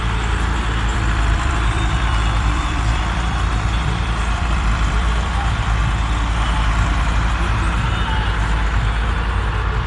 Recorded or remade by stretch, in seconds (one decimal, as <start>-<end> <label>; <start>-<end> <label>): 0.0-0.9 recorded; 0.9-5.8 remade; 5.8-9.9 recorded